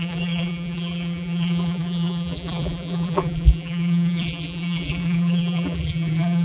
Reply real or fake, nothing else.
fake